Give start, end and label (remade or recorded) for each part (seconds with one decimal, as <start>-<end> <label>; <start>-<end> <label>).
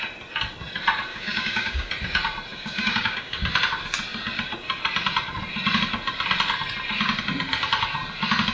0.0-1.1 recorded; 1.1-1.9 remade; 1.9-2.5 recorded; 2.5-3.4 remade; 3.4-8.5 recorded